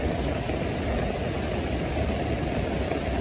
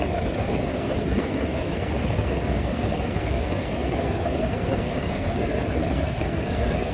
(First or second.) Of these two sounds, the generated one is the second